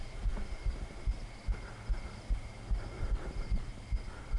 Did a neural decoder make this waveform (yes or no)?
no